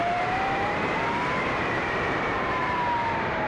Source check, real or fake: fake